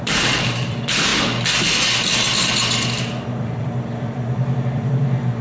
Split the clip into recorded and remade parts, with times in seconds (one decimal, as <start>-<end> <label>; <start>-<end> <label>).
0.0-1.1 remade; 1.1-3.3 recorded; 3.3-5.4 remade